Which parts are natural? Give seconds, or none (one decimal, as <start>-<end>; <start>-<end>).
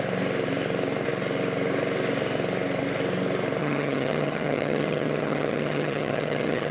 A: 0.0-3.6